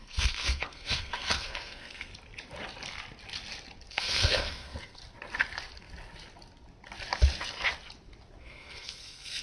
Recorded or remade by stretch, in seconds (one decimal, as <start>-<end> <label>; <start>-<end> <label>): 0.0-2.1 remade; 2.1-3.9 recorded; 3.9-5.0 remade; 5.0-8.4 recorded; 8.4-9.4 remade